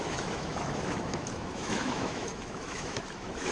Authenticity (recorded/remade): remade